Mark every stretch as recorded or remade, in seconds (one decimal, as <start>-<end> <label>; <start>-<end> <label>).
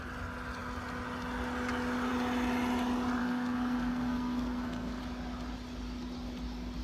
0.0-3.2 recorded; 3.2-5.0 remade; 5.0-6.8 recorded